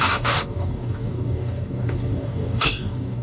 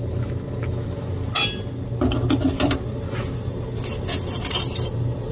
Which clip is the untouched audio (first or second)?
second